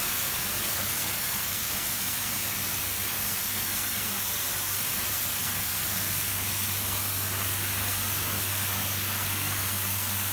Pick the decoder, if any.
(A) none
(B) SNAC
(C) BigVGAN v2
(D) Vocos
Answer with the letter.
B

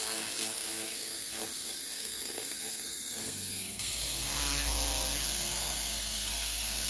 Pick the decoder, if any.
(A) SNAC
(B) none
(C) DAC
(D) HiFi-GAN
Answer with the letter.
A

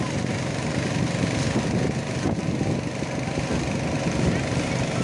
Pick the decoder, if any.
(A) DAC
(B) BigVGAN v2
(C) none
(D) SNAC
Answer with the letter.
C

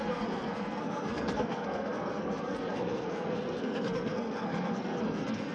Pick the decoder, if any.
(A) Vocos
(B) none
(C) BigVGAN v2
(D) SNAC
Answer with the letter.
D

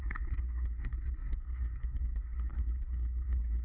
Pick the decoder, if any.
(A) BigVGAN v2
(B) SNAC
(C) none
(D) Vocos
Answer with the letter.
B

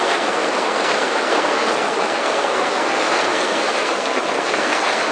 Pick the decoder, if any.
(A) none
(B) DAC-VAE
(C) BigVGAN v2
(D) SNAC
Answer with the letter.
D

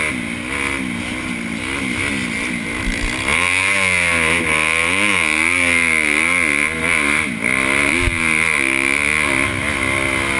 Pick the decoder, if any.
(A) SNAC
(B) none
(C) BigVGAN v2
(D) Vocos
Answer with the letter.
B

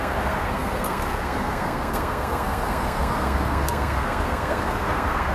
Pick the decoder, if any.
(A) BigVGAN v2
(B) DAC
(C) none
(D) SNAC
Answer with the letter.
D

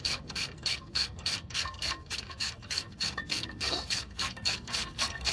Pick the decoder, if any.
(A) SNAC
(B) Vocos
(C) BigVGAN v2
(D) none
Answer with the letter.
A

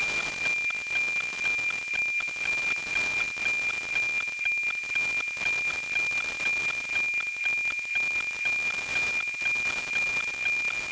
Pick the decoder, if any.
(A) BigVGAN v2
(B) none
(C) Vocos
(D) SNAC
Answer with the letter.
B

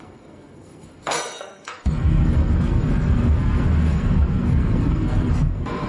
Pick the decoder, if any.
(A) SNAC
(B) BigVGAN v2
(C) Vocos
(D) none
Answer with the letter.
A